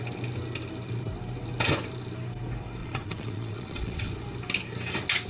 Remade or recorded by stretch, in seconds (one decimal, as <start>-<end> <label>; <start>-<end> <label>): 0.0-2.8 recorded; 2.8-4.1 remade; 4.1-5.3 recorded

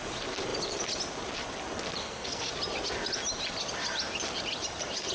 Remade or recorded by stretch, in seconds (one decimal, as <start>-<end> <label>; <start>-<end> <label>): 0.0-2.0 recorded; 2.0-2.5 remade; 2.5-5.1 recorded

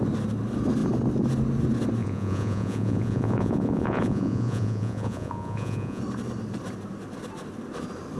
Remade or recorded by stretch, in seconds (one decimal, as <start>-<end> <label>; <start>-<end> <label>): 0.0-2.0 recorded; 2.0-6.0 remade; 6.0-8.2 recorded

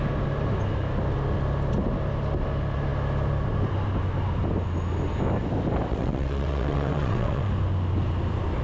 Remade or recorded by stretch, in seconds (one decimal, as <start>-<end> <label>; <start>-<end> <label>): 0.0-5.9 recorded; 5.9-7.5 remade; 7.5-8.6 recorded

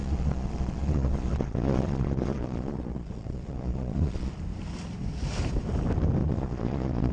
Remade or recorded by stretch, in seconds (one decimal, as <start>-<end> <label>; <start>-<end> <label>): 0.0-4.3 remade; 4.3-6.2 recorded; 6.2-7.1 remade